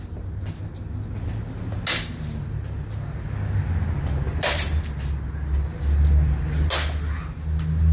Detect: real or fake real